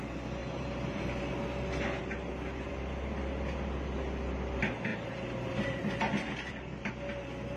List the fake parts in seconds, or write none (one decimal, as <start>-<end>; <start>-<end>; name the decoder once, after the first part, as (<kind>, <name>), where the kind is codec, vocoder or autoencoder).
0.4-1.3 (vocoder, BigVGAN v2); 4.9-6.9